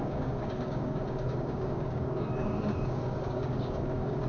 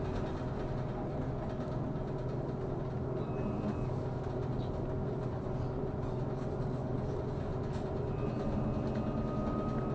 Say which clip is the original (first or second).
second